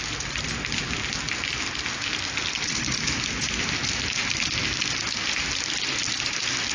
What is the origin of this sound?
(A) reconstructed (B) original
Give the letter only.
B